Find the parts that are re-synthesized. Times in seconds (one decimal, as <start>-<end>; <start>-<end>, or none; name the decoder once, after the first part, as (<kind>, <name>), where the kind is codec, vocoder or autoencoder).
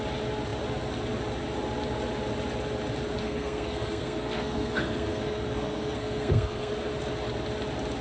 3.2-6.7 (codec, SNAC)